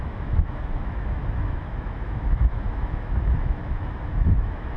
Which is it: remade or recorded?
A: remade